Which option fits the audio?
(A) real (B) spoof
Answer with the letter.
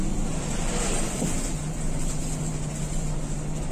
A